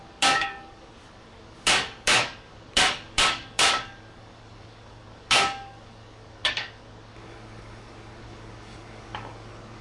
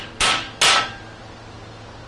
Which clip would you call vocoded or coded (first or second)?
first